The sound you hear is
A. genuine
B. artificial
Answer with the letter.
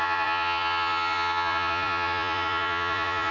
B